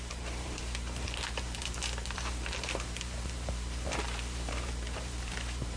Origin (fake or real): fake